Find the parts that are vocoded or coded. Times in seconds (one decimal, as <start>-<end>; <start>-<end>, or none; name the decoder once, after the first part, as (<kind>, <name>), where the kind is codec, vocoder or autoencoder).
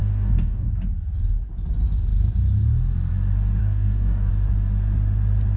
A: 0.0-0.7 (codec, DAC); 3.6-4.3